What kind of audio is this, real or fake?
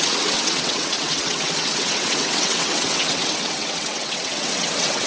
fake